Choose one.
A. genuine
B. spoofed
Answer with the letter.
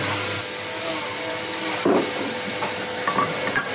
A